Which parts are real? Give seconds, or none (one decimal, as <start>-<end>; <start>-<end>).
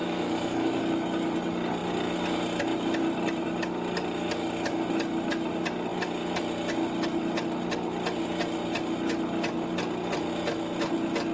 0.8-11.3